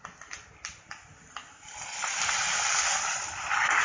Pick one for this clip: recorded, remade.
recorded